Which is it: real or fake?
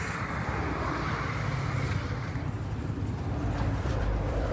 fake